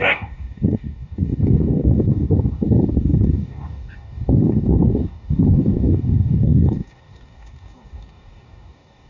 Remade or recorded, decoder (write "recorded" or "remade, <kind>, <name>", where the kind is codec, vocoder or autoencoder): remade, codec, DAC